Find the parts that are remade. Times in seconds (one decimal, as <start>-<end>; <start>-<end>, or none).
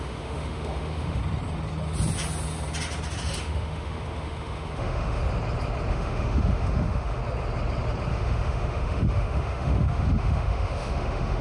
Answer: 0.0-1.2; 3.4-5.2; 5.9-7.2; 8.1-11.4